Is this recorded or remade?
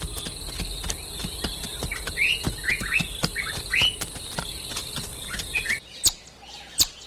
recorded